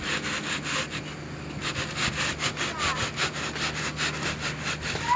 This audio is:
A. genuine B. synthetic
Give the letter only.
A